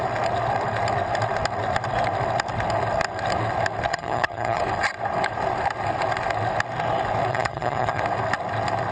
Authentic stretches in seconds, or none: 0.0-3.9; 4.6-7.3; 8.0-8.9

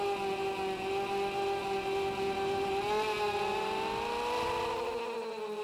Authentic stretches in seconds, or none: 0.0-5.6

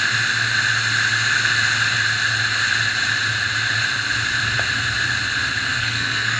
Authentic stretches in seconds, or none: 0.0-5.7

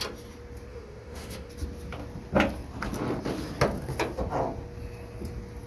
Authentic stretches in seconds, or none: 0.0-0.7; 1.5-5.7